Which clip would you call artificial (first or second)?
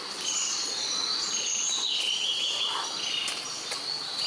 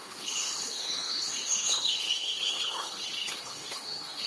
second